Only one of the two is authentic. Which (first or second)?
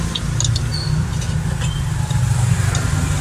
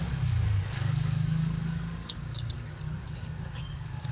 first